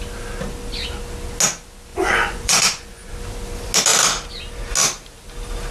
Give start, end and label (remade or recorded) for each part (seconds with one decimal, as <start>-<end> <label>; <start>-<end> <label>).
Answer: 0.0-1.9 recorded; 1.9-3.1 remade; 3.1-5.7 recorded